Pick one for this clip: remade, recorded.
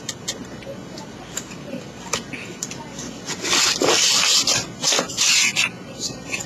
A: recorded